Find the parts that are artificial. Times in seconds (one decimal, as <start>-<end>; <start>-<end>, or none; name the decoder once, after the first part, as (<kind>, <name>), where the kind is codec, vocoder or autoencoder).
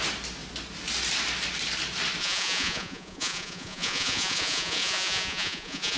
2.2-6.0 (vocoder, Vocos)